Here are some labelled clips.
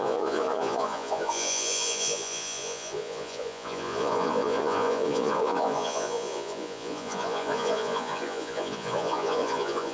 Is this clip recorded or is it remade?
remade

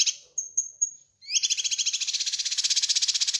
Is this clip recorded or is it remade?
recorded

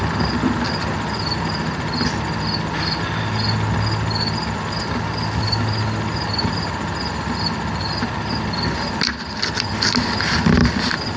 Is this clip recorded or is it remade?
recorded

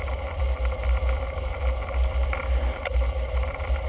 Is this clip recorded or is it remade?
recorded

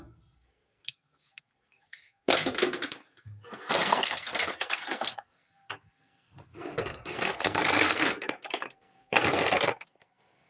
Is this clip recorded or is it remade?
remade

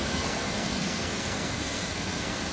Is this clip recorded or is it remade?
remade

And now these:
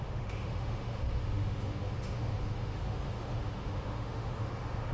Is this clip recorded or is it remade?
remade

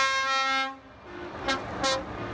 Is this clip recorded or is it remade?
recorded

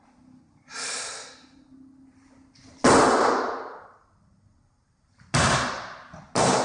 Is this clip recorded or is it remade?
recorded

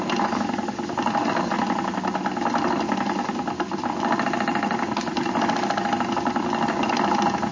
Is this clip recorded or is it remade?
recorded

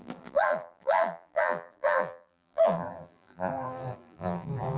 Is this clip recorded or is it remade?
remade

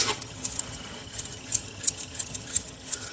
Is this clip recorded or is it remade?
remade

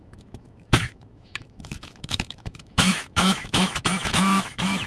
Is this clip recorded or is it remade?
remade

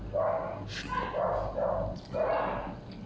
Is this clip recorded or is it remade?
recorded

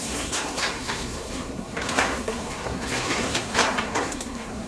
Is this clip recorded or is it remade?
remade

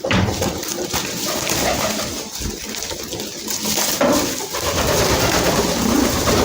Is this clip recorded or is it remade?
recorded